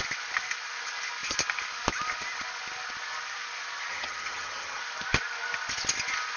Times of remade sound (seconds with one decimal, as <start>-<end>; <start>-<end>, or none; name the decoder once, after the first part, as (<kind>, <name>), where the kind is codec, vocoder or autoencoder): 3.9-4.8 (vocoder, HiFi-GAN)